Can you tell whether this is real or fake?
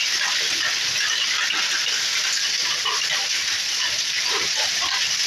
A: real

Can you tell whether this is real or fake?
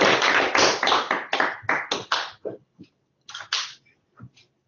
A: real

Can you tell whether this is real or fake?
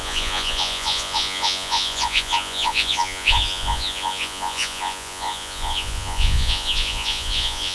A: fake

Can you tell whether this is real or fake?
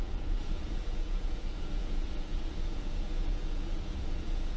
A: fake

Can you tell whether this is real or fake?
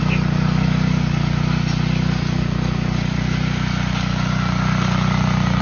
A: real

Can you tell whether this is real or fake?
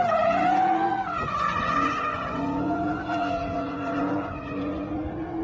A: fake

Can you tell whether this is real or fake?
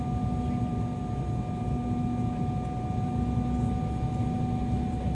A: real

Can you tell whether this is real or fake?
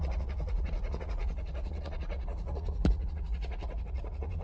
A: fake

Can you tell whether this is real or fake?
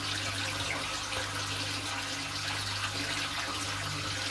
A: real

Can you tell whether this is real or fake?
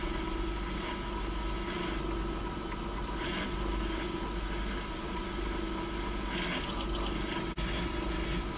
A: real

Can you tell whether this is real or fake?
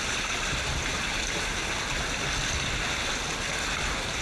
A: real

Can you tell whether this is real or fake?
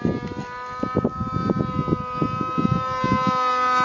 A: real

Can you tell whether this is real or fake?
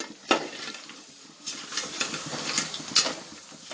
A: real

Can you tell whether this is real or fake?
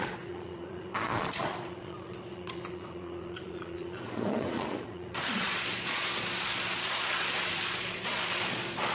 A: fake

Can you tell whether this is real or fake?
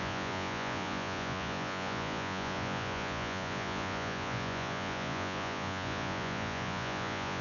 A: fake